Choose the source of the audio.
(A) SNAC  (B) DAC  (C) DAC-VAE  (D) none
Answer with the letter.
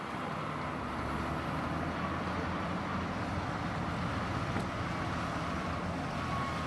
D